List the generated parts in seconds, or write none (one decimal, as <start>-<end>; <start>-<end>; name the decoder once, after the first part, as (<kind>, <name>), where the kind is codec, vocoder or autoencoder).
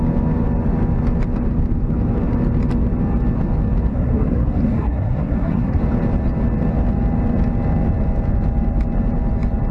3.9-5.8 (codec, SNAC)